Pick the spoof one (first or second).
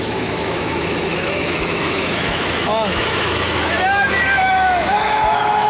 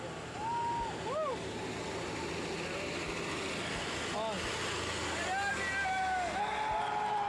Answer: first